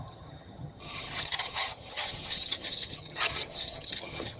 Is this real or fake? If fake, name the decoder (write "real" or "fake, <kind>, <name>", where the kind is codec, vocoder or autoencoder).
fake, vocoder, HiFi-GAN